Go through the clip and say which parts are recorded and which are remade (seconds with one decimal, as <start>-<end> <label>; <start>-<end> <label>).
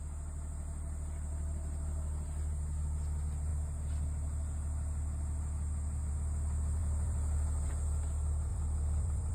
0.0-6.8 recorded; 6.8-7.7 remade; 7.7-8.5 recorded; 8.5-9.3 remade